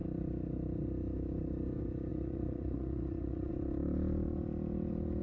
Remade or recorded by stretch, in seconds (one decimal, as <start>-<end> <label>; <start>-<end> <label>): 0.0-2.1 recorded; 2.1-3.5 remade; 3.5-5.2 recorded